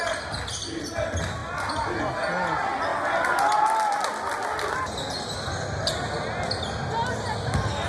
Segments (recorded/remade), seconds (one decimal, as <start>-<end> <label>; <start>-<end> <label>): 0.0-7.9 recorded